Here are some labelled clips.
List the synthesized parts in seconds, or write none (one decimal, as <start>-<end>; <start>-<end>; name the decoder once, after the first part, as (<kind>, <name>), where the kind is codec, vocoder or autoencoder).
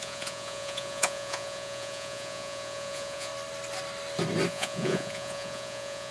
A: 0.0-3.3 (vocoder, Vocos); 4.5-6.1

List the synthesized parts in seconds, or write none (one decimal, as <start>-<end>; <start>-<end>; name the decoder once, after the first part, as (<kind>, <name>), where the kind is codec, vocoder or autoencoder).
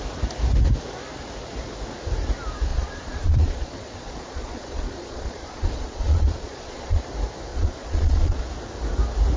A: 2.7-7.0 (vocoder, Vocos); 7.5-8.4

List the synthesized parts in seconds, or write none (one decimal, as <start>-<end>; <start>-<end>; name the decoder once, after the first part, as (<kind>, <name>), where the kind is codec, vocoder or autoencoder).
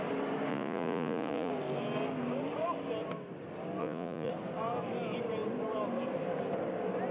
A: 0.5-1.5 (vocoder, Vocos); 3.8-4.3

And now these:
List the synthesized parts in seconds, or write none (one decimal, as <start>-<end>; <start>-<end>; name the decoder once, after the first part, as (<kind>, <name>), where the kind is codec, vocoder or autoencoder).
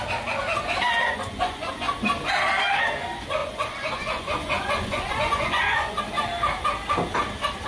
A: 1.0-1.7 (vocoder, Vocos); 3.4-6.0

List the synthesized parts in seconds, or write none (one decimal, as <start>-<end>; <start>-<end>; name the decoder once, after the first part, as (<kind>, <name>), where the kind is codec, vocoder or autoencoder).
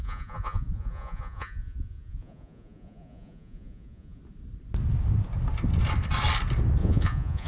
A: 0.0-4.2 (vocoder, Vocos); 6.8-7.5